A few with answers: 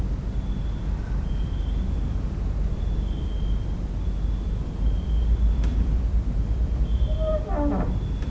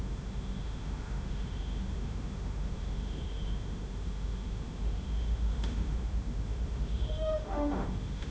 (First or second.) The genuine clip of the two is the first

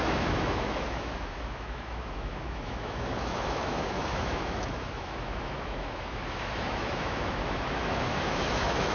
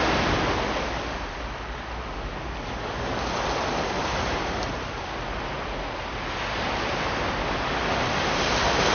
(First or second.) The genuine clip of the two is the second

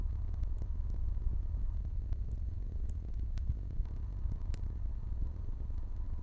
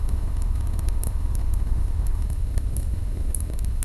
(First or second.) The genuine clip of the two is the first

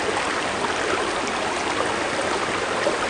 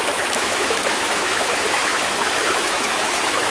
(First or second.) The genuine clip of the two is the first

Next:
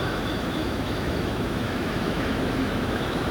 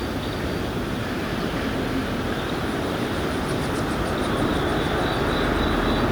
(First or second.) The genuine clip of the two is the second